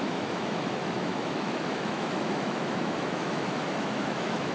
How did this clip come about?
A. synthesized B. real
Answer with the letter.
A